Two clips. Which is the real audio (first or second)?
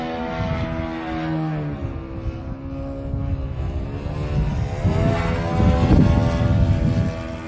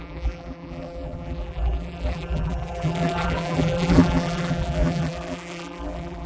first